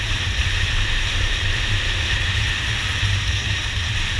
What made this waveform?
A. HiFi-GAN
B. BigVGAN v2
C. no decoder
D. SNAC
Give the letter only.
B